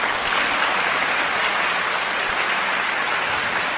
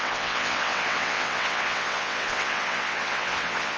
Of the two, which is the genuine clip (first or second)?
first